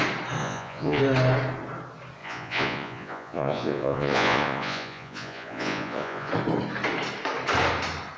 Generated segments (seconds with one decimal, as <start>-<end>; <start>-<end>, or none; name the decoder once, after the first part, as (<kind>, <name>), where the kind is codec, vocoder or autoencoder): 0.4-1.0 (vocoder, Vocos); 2.2-6.3